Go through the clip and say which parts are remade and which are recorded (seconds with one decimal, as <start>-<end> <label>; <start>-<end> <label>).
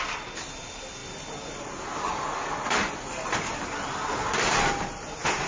0.0-5.5 recorded